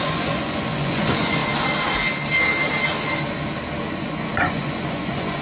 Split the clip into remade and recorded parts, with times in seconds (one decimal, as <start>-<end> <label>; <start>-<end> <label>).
0.0-1.4 remade; 1.4-3.9 recorded; 3.9-5.4 remade